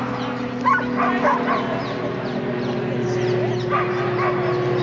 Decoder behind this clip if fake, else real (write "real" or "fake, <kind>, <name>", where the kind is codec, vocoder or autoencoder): real